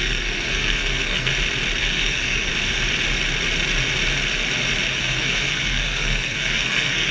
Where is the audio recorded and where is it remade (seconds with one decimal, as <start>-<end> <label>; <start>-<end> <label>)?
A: 0.0-1.3 remade; 1.3-1.8 recorded; 1.8-2.5 remade; 2.5-5.0 recorded; 5.0-7.1 remade